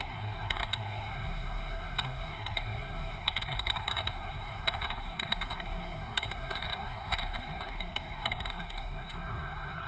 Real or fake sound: fake